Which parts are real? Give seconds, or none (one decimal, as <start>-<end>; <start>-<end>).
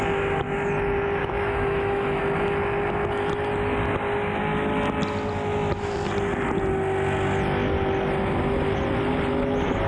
0.0-1.2; 2.2-9.9